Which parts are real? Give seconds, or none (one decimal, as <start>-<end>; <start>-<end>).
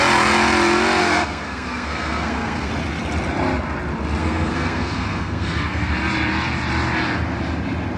0.0-1.0; 2.7-4.2; 5.9-8.0